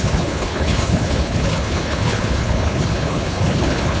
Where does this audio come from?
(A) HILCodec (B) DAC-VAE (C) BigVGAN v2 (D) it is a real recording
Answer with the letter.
A